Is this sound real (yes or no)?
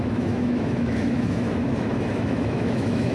no